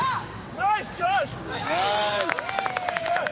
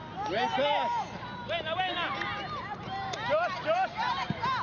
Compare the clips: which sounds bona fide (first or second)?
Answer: second